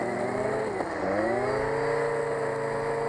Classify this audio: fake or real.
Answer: real